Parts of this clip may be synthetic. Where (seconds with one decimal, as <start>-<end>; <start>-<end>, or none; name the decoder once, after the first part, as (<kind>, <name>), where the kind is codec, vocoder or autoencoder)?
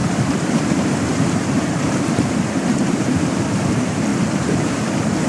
0.0-3.2 (vocoder, BigVGAN v2); 4.1-4.8